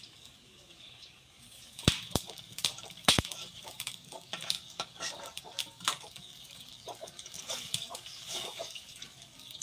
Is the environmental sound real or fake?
fake